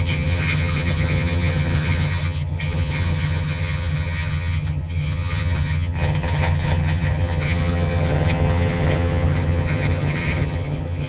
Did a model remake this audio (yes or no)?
yes